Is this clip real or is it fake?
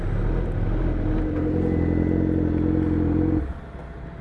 real